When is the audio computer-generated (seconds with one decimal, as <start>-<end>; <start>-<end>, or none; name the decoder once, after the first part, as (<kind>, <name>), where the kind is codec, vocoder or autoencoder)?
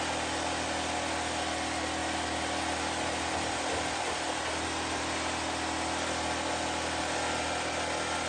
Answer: none